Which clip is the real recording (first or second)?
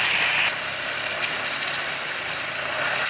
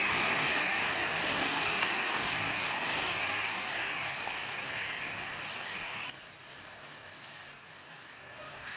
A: first